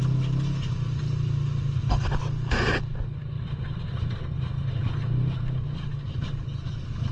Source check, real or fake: real